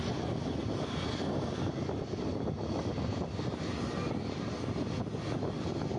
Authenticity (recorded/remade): recorded